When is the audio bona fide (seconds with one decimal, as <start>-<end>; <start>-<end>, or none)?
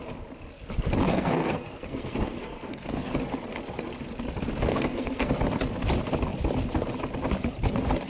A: 0.0-1.1; 3.1-4.7; 5.3-8.1